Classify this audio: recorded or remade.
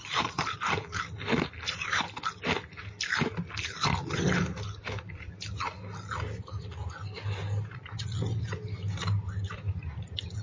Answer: recorded